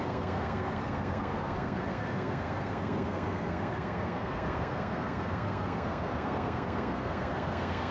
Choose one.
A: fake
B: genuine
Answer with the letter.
A